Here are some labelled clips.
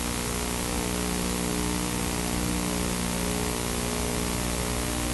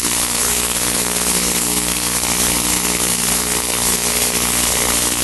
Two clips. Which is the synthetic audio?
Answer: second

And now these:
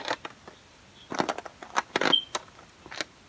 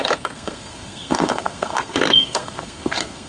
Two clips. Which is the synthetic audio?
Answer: second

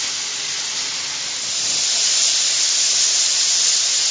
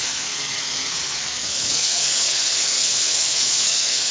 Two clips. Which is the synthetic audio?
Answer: second